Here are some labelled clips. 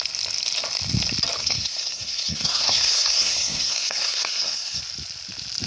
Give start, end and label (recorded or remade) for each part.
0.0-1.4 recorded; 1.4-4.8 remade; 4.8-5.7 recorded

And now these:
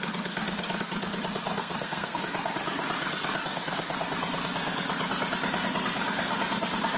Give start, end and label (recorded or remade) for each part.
0.0-1.6 recorded; 1.6-2.2 remade; 2.2-7.0 recorded